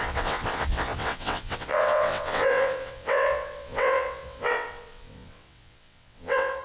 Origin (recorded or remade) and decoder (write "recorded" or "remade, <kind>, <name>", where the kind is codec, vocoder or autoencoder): remade, vocoder, WaveNeXt